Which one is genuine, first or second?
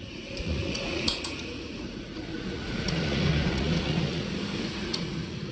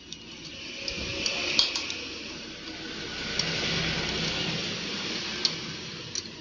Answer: second